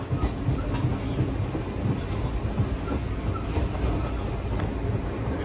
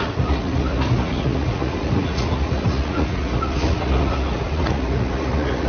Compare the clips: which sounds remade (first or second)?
second